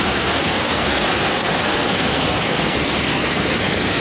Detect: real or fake fake